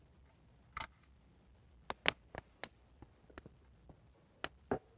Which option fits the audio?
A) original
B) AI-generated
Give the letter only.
A